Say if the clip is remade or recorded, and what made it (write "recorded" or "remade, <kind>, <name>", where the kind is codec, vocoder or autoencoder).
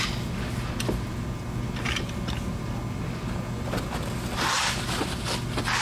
recorded